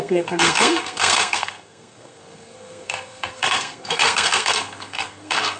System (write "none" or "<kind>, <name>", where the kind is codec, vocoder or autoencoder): codec, SNAC